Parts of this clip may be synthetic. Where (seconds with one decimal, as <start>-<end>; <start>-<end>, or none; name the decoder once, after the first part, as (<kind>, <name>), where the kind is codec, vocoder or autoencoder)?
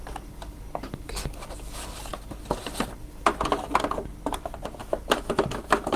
4.8-6.0 (autoencoder, DAC-VAE)